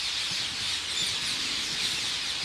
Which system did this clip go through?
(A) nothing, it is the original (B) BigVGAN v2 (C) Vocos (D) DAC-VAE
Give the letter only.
A